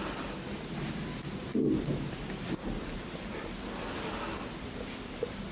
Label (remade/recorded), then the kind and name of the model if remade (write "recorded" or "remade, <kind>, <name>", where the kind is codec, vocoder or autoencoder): recorded